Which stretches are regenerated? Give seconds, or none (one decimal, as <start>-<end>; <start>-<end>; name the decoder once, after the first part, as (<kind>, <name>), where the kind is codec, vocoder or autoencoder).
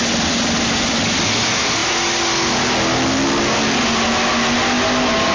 none